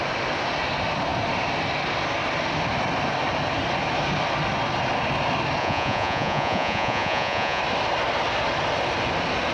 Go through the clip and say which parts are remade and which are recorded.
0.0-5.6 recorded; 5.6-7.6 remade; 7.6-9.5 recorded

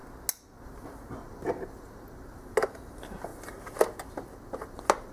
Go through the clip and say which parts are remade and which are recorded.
0.0-5.1 recorded

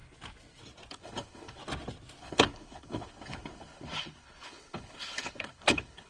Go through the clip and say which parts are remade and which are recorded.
0.0-0.9 recorded; 0.9-1.6 remade; 1.6-2.2 recorded; 2.2-6.1 remade

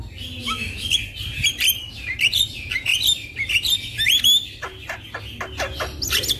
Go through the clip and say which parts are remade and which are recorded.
0.0-0.4 recorded; 0.4-1.0 remade; 1.0-6.4 recorded

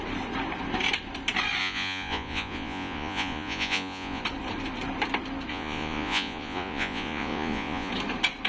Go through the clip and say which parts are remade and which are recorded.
0.0-1.6 recorded; 1.6-4.2 remade; 4.2-5.5 recorded; 5.5-7.9 remade; 7.9-8.5 recorded

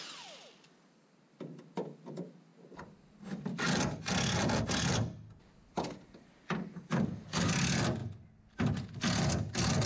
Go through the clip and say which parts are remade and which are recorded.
0.0-9.9 recorded